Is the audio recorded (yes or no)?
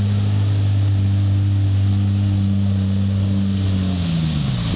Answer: yes